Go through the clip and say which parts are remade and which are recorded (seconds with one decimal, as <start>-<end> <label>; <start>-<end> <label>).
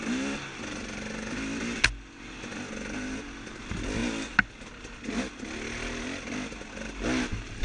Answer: 0.0-7.6 recorded